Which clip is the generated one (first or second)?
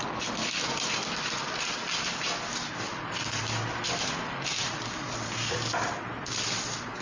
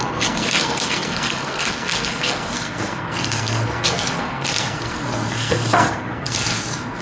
second